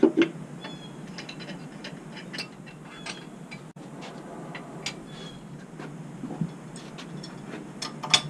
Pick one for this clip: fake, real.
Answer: real